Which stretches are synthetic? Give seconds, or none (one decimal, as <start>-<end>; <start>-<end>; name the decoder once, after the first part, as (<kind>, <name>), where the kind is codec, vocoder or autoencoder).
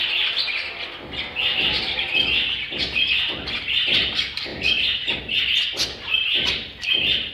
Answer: none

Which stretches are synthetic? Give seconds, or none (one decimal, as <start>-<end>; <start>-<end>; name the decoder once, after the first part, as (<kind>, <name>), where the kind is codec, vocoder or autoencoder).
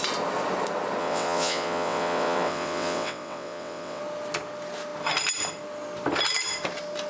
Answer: 1.0-4.0 (vocoder, WaveNeXt)